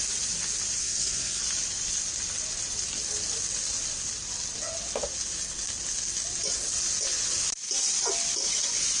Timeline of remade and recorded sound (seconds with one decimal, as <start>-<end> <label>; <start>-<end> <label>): 0.0-0.8 recorded; 0.8-1.4 remade; 1.4-9.0 recorded